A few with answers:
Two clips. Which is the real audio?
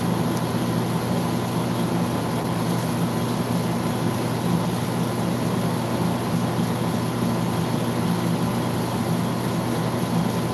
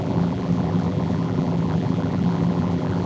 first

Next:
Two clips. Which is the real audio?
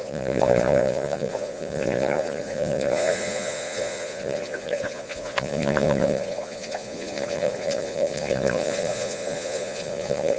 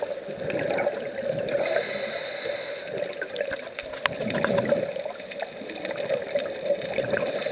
second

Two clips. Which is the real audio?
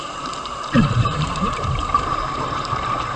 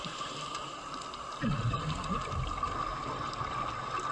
second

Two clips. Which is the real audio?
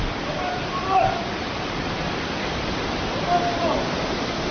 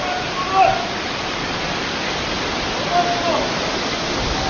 second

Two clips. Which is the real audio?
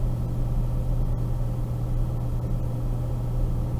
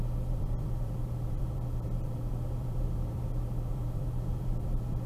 first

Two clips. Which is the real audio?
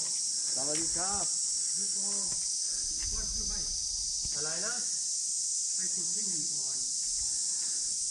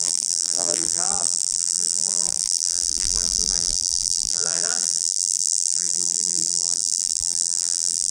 first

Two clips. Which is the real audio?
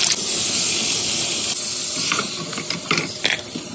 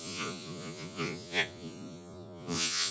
first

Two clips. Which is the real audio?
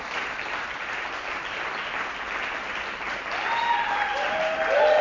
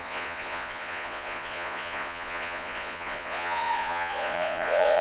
first